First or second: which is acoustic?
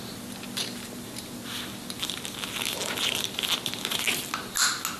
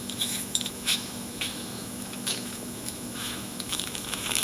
first